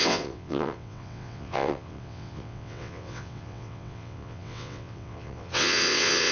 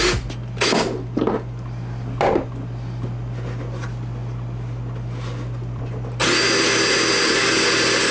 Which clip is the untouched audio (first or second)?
second